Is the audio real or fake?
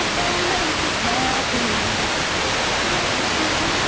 real